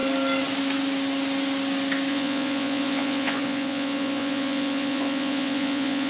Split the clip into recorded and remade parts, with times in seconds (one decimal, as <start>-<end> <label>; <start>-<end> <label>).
0.0-2.1 recorded; 2.1-6.1 remade